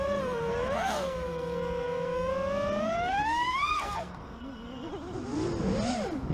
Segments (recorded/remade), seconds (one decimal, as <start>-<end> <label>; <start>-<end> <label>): 0.0-2.3 remade; 2.3-2.8 recorded; 2.8-4.9 remade; 4.9-6.3 recorded

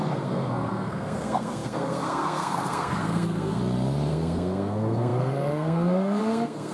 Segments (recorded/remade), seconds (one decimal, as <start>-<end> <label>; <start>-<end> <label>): 0.0-3.6 remade; 3.6-4.1 recorded; 4.1-6.7 remade

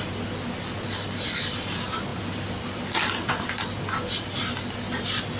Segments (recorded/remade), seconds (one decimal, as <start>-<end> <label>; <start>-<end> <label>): 0.0-5.4 recorded

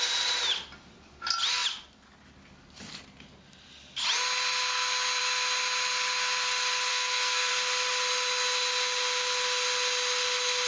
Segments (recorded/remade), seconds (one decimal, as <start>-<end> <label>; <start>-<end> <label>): 0.0-6.9 recorded; 6.9-7.5 remade; 7.5-10.7 recorded

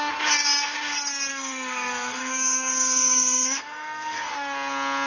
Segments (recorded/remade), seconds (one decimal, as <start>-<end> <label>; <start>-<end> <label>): 0.0-1.3 recorded; 1.3-4.3 remade; 4.3-5.1 recorded